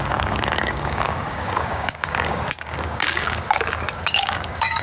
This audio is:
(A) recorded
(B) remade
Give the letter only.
B